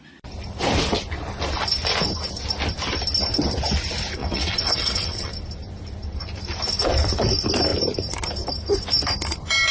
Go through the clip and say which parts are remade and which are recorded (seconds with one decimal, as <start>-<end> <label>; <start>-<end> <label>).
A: 0.0-4.2 recorded; 4.2-5.3 remade; 5.3-9.7 recorded